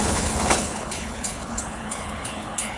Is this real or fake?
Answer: fake